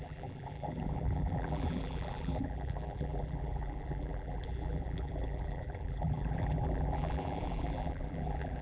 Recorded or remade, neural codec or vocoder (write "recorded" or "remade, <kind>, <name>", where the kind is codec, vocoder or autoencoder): remade, vocoder, BigVGAN v2